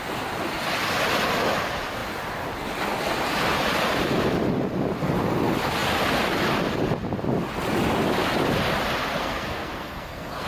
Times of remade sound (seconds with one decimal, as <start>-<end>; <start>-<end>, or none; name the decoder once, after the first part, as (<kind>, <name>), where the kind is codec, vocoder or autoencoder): 9.1-10.5 (codec, SNAC)